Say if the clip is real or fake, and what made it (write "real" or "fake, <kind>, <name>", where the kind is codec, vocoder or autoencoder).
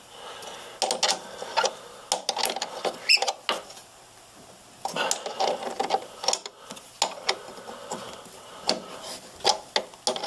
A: real